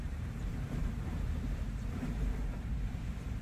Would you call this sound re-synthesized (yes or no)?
yes